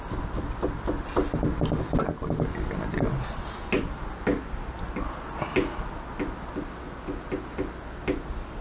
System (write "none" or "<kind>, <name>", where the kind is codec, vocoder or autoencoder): none